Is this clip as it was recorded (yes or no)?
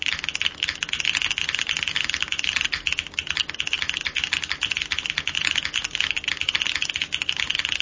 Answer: yes